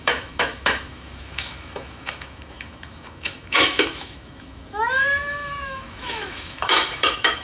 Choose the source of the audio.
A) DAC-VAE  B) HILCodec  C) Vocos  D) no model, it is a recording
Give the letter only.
A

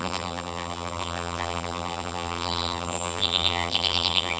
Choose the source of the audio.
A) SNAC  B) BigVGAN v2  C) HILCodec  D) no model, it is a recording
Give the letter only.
B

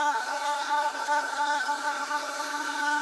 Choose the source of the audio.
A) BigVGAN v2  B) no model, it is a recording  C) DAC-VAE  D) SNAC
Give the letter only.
D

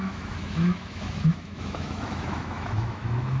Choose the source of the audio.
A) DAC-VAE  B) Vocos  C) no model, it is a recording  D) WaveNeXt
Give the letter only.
A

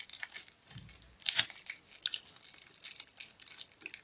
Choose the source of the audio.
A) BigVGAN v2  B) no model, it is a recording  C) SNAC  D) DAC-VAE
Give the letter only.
B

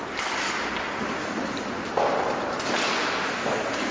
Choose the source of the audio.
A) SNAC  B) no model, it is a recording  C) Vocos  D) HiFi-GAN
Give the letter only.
B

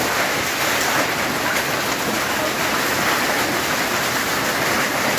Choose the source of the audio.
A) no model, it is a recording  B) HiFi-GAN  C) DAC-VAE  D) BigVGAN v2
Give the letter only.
A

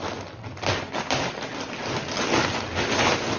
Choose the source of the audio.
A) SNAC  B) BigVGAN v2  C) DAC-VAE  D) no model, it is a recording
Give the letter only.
D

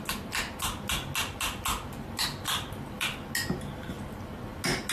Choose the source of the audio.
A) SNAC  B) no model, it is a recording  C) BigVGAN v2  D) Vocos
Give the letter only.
B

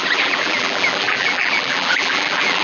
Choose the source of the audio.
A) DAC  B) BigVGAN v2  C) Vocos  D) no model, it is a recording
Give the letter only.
B